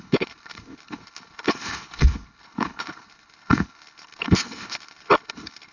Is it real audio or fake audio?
fake